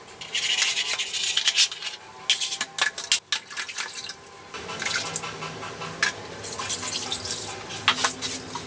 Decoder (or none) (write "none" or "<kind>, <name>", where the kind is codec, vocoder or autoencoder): none